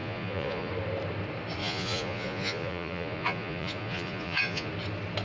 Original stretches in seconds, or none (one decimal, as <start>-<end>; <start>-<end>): 0.7-1.6; 4.7-5.2